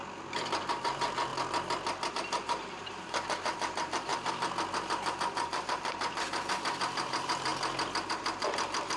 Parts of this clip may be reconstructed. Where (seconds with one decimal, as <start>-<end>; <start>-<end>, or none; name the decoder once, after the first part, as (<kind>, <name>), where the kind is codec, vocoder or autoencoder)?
0.7-1.3 (vocoder, BigVGAN v2); 2.1-4.1; 5.1-7.5; 8.1-9.0